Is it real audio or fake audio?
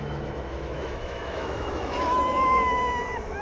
fake